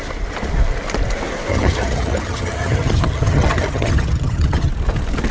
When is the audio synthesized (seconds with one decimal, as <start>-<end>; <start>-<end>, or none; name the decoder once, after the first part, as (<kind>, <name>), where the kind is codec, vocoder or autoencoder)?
1.5-4.7 (vocoder, HiFi-GAN)